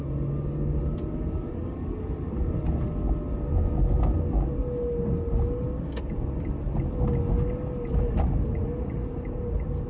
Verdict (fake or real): real